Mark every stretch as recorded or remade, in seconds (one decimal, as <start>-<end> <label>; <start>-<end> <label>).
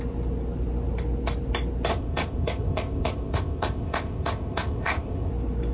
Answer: 0.0-1.9 recorded; 1.9-5.3 remade; 5.3-5.7 recorded